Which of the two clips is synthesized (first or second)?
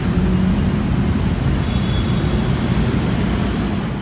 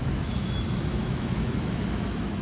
second